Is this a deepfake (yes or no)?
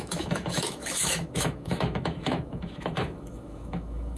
yes